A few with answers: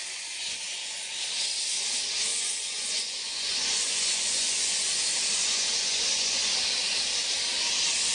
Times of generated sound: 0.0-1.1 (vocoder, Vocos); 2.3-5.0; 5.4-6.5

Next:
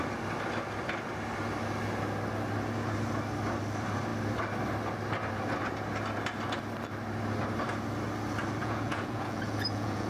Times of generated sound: 8.6-10.1 (vocoder, Vocos)

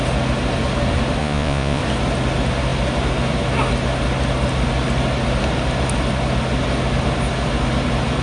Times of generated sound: 1.2-1.8 (vocoder, Vocos)

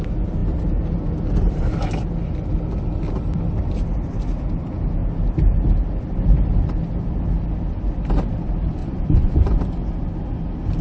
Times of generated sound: 8.8-9.6 (vocoder, Vocos)

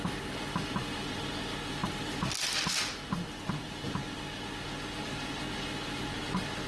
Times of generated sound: none